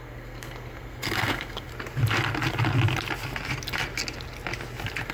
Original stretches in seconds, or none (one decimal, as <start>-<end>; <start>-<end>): 1.7-5.1